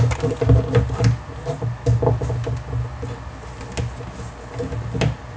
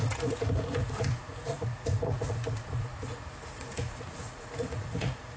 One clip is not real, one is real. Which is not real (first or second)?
second